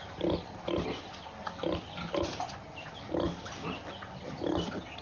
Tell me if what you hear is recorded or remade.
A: recorded